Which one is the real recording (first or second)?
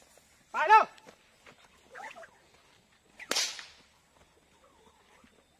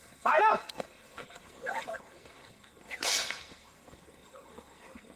first